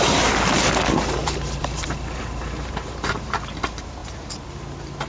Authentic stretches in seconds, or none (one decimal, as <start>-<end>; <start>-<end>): 0.0-1.2; 3.3-5.1

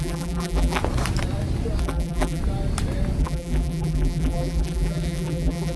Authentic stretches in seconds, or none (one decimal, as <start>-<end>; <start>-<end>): 0.8-1.8; 2.4-3.2

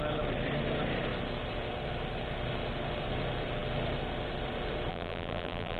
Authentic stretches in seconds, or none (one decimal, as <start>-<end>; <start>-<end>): 0.0-4.9

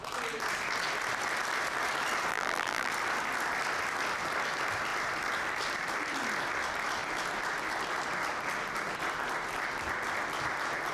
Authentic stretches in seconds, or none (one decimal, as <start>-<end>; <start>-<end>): 0.0-2.3; 2.9-10.9

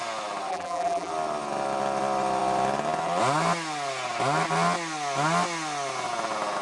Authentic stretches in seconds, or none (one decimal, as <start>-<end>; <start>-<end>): 0.0-0.5; 1.1-6.6